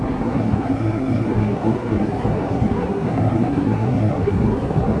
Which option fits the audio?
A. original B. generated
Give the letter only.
B